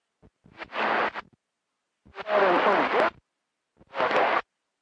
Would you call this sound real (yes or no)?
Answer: yes